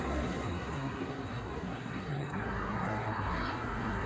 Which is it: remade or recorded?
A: remade